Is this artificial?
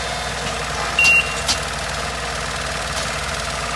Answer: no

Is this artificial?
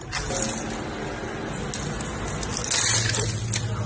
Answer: no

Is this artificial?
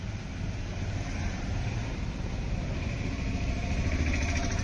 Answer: yes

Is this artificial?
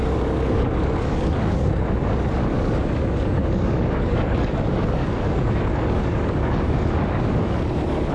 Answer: yes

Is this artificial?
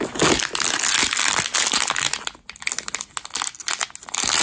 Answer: no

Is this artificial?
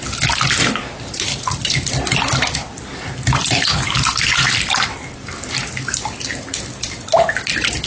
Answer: no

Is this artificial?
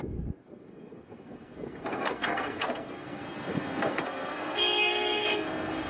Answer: yes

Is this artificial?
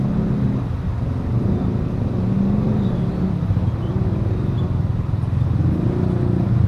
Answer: no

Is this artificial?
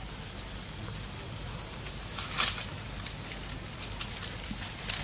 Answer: no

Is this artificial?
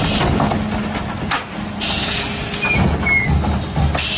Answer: no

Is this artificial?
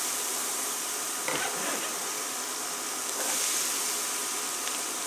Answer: yes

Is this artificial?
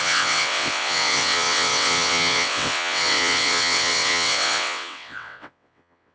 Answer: yes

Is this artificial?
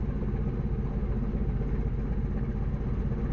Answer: no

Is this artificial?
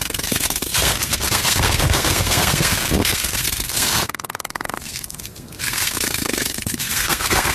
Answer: yes